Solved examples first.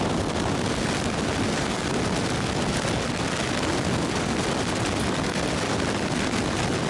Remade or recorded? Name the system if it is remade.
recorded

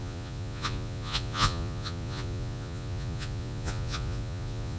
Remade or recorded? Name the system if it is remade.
remade, vocoder, Vocos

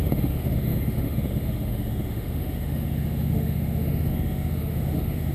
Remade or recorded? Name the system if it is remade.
remade, autoencoder, DAC-VAE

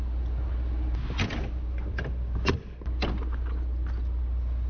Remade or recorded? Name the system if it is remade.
recorded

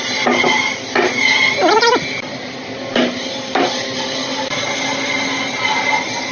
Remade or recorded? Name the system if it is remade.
recorded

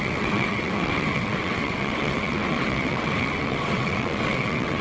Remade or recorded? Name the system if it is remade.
remade, vocoder, WaveNeXt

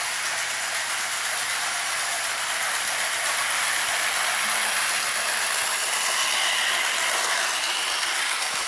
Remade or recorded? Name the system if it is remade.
recorded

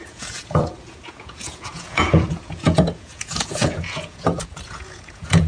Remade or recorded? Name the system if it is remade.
remade, vocoder, Vocos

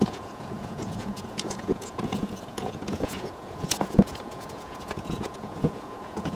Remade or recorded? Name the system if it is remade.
remade, vocoder, Vocos